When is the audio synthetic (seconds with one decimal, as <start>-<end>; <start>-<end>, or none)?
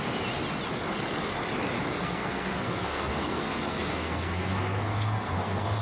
1.9-5.8